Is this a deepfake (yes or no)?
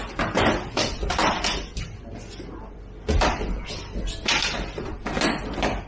no